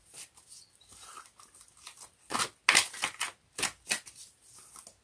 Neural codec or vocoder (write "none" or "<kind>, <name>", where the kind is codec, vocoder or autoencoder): none